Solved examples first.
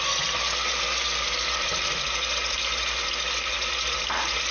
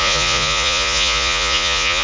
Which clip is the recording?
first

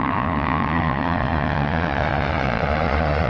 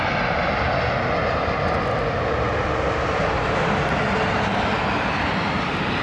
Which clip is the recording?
second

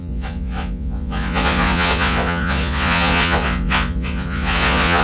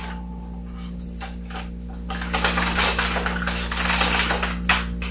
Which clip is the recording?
second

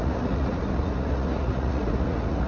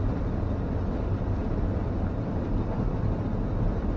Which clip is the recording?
second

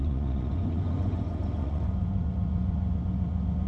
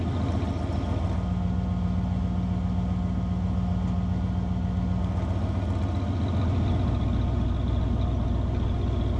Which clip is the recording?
second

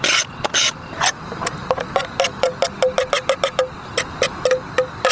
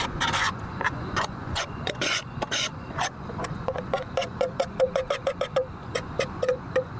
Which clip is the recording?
first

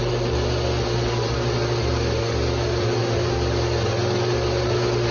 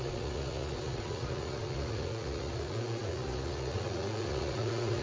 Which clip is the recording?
first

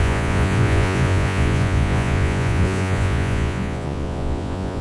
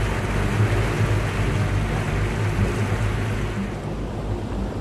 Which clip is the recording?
second